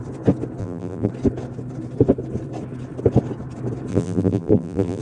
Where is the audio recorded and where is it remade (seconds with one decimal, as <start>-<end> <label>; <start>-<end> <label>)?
0.0-0.6 recorded; 0.6-1.1 remade; 1.1-3.9 recorded; 3.9-5.0 remade